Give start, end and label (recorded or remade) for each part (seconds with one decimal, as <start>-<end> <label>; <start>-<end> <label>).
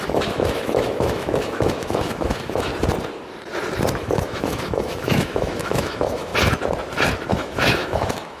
0.0-2.7 remade; 2.7-4.0 recorded; 4.0-6.3 remade; 6.3-7.3 recorded; 7.3-8.4 remade